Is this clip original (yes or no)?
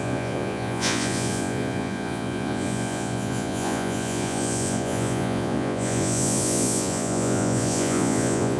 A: no